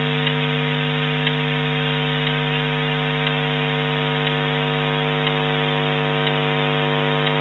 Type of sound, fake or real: real